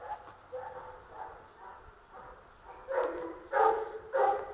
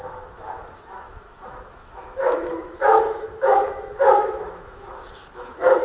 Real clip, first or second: first